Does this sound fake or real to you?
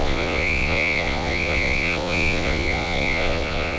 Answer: fake